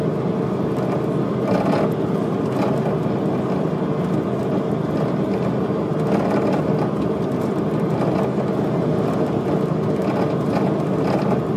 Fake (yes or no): no